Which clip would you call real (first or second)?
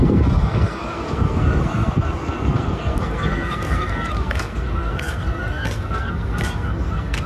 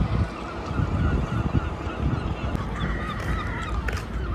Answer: second